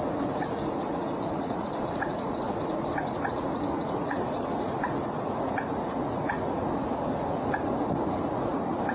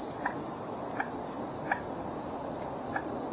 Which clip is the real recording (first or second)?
second